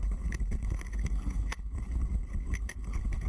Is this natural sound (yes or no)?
no